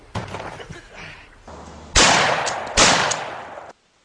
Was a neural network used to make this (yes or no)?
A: no